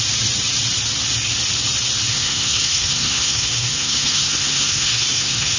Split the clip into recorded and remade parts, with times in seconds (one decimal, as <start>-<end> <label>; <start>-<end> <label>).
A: 0.0-2.1 recorded; 2.1-5.6 remade